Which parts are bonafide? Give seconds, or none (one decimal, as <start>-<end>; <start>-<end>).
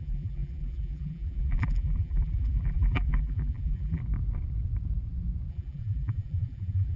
4.0-5.5